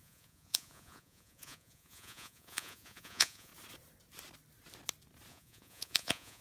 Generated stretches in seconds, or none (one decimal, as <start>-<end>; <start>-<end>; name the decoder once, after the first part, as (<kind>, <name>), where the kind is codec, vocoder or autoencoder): 0.0-3.5 (vocoder, Vocos); 5.3-6.4